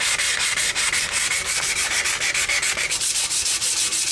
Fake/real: real